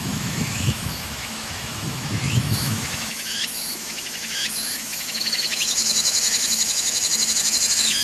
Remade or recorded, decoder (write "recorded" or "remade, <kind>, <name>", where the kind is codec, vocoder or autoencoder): remade, autoencoder, DAC-VAE